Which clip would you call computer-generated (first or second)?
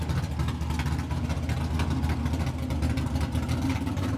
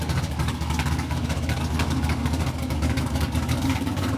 second